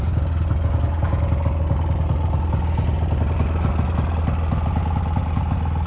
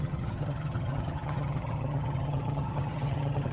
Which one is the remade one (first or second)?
second